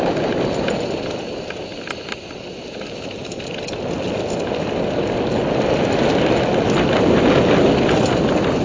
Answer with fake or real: real